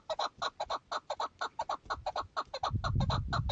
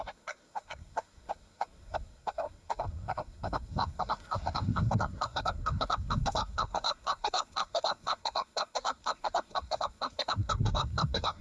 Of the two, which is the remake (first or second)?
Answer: second